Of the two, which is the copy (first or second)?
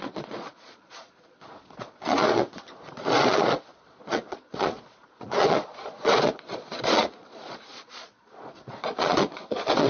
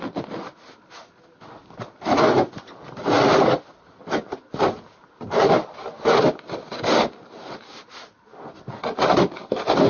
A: first